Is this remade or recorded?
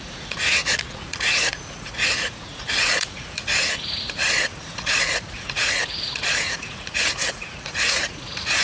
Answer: remade